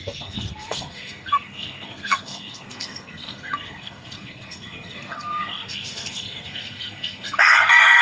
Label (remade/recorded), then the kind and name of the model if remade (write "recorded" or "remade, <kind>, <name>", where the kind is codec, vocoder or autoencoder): remade, codec, SNAC